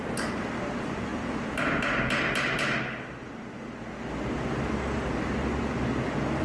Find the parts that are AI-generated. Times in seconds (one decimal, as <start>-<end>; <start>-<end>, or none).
none